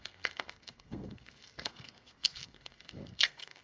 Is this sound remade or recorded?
remade